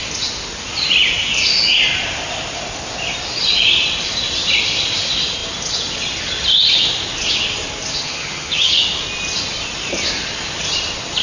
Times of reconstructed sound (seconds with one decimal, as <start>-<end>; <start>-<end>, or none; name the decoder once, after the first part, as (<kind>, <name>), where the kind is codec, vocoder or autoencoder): 7.9-8.8 (vocoder, HiFi-GAN)